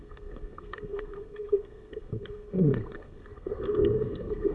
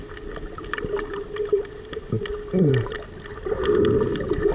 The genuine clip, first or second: second